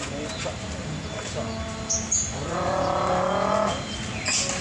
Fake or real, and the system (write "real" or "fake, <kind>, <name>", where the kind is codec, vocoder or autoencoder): real